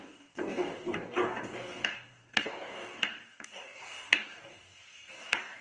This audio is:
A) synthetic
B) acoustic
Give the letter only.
A